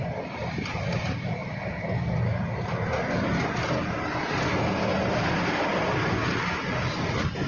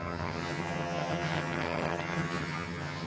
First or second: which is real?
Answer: first